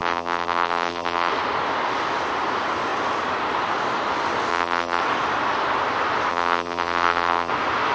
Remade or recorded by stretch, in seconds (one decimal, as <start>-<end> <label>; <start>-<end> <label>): 0.0-1.3 remade; 1.3-4.5 recorded; 4.5-5.0 remade; 5.0-6.3 recorded; 6.3-7.5 remade; 7.5-7.9 recorded